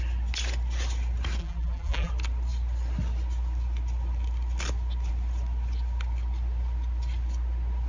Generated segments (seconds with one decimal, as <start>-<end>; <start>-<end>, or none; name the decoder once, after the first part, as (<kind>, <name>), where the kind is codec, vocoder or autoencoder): 1.4-2.1 (vocoder, BigVGAN v2)

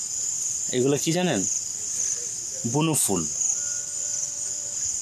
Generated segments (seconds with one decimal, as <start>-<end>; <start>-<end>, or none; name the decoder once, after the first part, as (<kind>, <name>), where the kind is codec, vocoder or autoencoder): 0.0-1.8 (vocoder, BigVGAN v2)

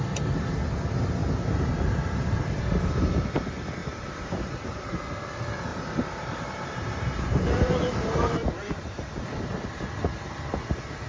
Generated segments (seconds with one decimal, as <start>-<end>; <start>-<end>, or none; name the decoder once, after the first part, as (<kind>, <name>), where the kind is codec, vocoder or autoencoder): 1.2-2.6 (vocoder, BigVGAN v2); 3.8-4.9; 5.7-8.8